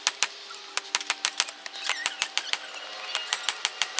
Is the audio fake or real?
real